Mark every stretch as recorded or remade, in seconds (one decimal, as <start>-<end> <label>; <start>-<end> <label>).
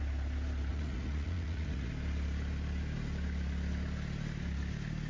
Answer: 0.0-0.7 recorded; 0.7-1.9 remade; 1.9-5.1 recorded